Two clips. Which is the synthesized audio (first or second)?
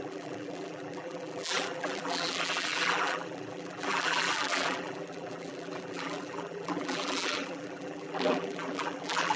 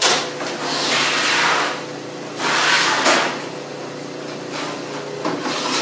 first